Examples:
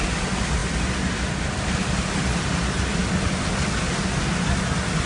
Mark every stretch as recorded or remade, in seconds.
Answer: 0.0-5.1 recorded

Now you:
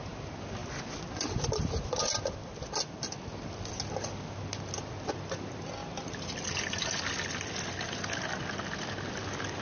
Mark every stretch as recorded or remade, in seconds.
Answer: 0.0-9.6 recorded

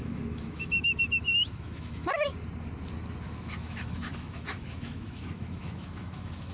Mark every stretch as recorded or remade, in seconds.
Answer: 0.0-2.3 remade; 2.3-3.2 recorded; 3.2-6.5 remade

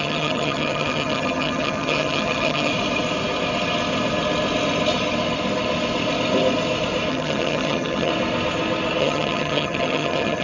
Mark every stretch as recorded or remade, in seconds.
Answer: 0.0-2.7 remade; 2.7-7.1 recorded; 7.1-8.1 remade; 8.1-9.0 recorded; 9.0-10.4 remade